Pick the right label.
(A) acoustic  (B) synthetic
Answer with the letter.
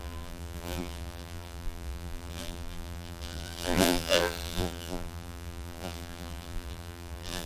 B